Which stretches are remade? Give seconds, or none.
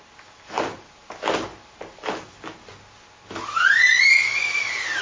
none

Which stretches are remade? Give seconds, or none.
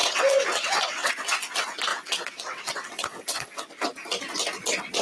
0.0-1.1 (vocoder, WaveNeXt); 1.9-3.6